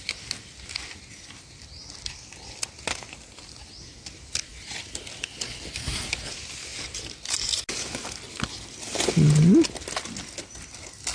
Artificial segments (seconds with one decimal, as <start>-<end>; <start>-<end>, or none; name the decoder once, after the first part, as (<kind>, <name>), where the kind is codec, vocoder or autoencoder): none